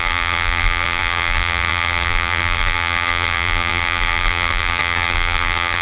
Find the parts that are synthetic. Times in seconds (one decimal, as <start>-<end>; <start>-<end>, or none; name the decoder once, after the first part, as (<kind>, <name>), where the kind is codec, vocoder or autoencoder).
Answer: 0.0-5.8 (vocoder, BigVGAN v2)